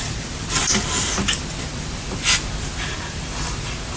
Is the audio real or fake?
real